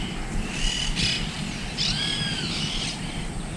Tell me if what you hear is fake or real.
real